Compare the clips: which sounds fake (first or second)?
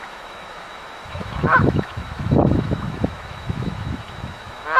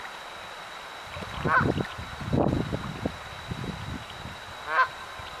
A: first